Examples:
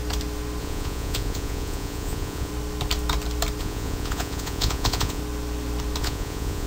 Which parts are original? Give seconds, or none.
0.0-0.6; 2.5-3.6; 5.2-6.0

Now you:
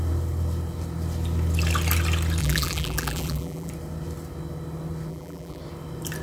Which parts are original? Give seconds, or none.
0.0-2.4; 3.7-5.1; 5.6-6.2

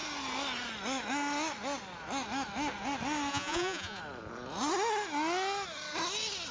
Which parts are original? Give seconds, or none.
0.0-3.3; 4.0-6.5

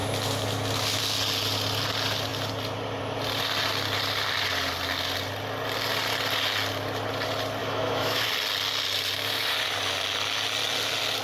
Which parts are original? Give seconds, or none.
0.0-7.6; 8.3-11.2

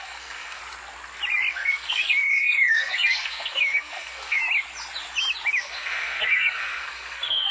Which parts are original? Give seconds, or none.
0.6-1.5; 4.4-5.6